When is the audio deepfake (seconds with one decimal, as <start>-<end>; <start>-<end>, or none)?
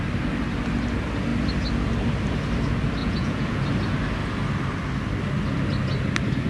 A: 3.0-3.6